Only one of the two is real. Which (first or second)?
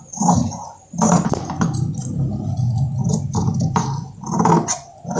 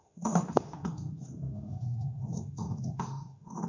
first